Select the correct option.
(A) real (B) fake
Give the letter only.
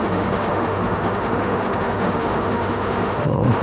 B